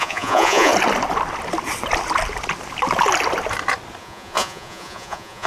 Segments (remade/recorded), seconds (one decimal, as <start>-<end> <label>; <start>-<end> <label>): 0.0-0.7 remade; 0.7-4.0 recorded; 4.0-5.5 remade